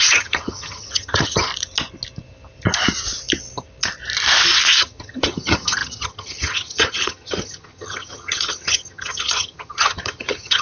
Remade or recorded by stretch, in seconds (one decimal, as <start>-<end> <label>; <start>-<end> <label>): 0.0-1.5 remade; 1.5-4.8 recorded; 4.8-10.6 remade